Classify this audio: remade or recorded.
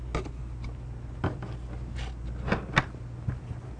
recorded